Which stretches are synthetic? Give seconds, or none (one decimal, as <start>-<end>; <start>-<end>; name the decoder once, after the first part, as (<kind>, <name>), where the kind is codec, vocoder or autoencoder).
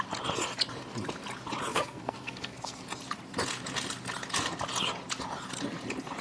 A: 1.7-2.8 (codec, SNAC)